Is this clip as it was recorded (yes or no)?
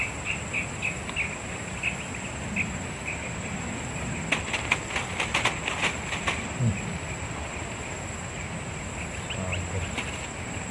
yes